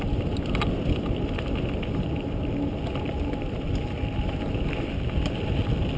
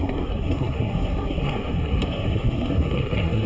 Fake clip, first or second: second